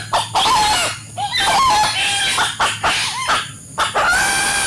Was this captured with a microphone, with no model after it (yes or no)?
yes